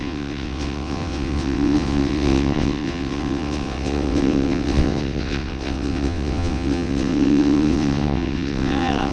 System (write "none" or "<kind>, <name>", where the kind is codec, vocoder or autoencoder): vocoder, WaveNeXt